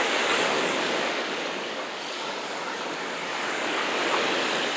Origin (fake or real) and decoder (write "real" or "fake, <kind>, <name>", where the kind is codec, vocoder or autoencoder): fake, codec, DAC